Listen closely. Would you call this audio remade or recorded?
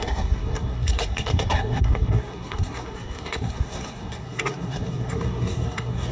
remade